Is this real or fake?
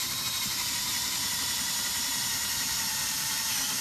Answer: fake